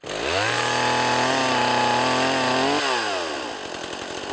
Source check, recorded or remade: recorded